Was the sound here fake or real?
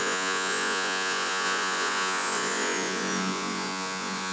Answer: fake